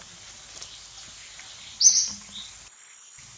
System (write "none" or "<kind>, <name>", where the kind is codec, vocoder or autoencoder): none